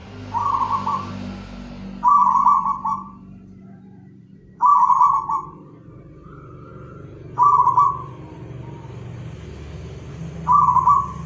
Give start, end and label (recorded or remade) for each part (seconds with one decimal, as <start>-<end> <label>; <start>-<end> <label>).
0.0-1.1 remade; 1.1-2.2 recorded; 2.2-4.5 remade; 4.5-11.3 recorded